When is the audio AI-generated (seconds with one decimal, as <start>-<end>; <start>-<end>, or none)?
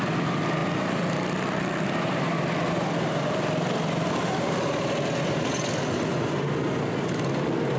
none